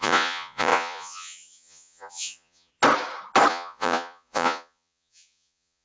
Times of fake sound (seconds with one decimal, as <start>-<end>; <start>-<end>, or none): 0.0-2.7; 3.5-5.8